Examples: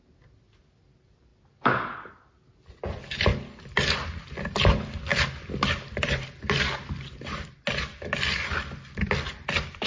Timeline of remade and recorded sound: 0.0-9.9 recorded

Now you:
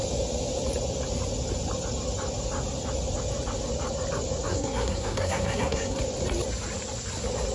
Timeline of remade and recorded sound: 0.0-4.5 recorded; 4.5-6.0 remade; 6.0-7.5 recorded

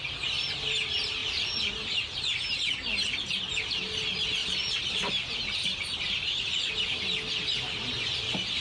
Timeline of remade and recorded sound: 0.0-8.6 recorded